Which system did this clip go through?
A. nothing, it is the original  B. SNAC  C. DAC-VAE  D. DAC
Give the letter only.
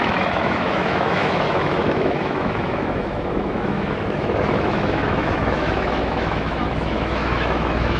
C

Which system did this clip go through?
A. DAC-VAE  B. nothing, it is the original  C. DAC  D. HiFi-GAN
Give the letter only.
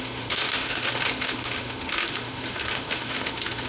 A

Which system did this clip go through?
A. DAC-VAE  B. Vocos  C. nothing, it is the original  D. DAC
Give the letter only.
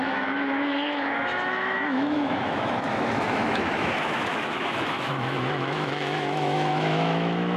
A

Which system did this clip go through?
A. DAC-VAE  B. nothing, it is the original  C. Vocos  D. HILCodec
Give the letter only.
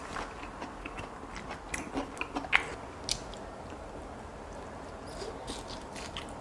B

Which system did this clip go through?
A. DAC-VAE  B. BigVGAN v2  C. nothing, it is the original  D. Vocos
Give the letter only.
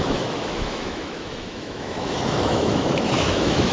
A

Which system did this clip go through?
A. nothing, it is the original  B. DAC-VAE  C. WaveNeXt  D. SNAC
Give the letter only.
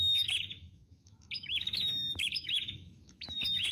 B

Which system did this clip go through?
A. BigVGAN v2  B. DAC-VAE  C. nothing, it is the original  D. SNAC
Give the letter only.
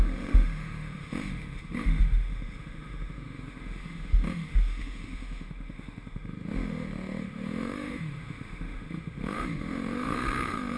B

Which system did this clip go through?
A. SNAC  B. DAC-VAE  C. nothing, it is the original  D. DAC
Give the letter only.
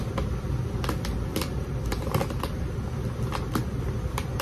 C